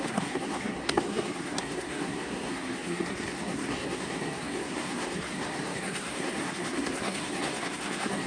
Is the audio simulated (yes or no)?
yes